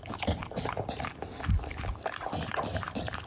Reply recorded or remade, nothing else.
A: recorded